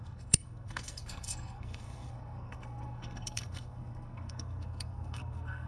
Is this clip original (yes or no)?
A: no